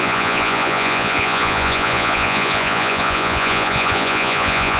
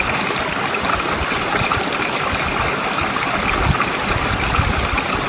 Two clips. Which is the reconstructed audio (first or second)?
first